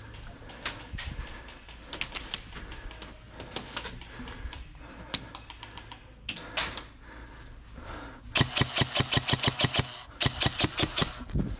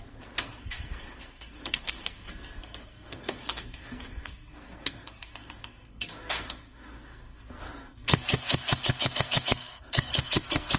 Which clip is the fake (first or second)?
second